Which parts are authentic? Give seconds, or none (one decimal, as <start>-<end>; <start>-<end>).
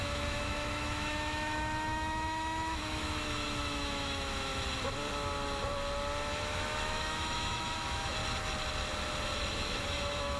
4.5-6.3; 8.2-9.5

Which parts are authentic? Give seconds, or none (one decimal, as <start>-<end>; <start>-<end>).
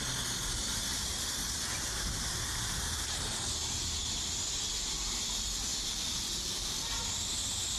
0.0-0.9; 2.2-7.8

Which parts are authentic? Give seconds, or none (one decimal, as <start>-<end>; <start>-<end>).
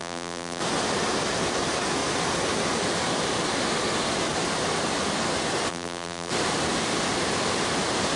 0.6-5.7; 6.3-8.2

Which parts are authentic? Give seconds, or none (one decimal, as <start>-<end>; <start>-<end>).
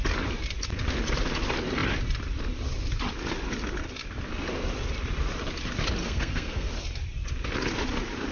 0.0-6.0; 6.7-8.3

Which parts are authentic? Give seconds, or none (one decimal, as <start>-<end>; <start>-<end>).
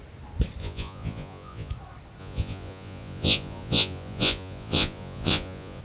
0.0-0.6; 1.7-2.2